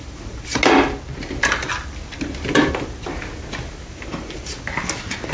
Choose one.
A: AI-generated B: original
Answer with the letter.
B